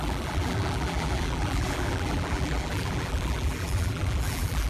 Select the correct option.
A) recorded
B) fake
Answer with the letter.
B